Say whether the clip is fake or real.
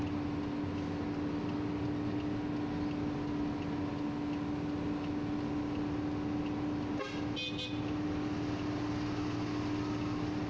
real